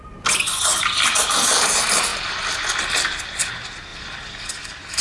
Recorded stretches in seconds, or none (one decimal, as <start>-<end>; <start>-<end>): 0.0-0.7; 1.5-2.1; 3.5-3.9; 4.5-5.0